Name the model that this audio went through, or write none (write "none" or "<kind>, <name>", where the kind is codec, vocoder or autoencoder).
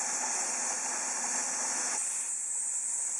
none